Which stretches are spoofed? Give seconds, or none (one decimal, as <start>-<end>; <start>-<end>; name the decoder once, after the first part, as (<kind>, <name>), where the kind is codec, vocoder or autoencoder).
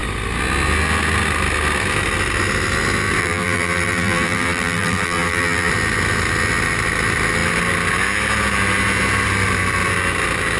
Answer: 3.2-5.7 (vocoder, BigVGAN v2)